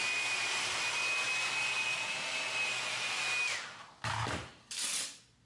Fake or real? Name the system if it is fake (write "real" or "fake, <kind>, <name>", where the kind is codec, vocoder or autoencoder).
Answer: real